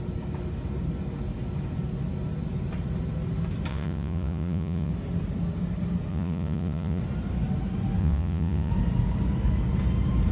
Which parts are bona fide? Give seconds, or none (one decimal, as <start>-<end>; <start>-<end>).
0.0-3.7; 4.9-6.1; 7.0-8.0; 8.7-10.3